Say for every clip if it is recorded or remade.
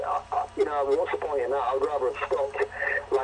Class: recorded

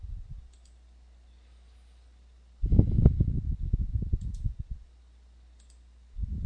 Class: recorded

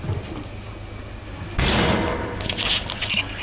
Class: recorded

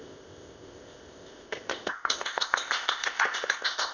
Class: remade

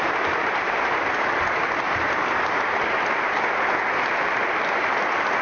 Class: recorded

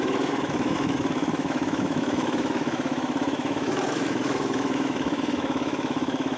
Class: remade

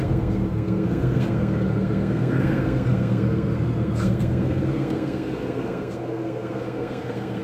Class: remade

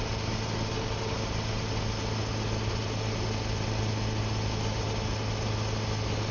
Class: recorded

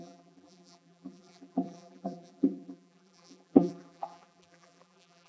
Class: remade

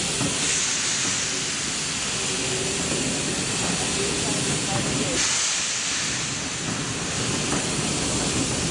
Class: recorded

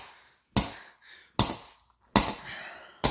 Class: recorded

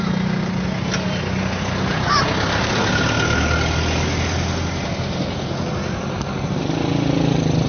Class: recorded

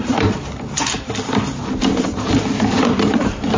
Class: remade